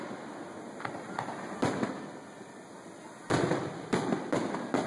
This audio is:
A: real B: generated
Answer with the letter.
A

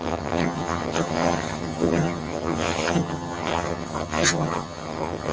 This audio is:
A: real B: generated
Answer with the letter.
B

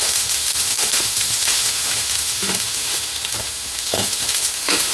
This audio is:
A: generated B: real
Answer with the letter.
A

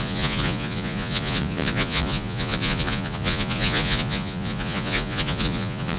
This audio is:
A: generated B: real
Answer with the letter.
A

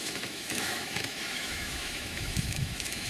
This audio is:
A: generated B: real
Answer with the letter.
A